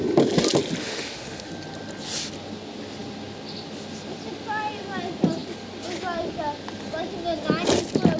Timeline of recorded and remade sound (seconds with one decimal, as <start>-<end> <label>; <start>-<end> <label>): 0.0-0.8 recorded; 0.8-1.5 remade; 1.5-8.2 recorded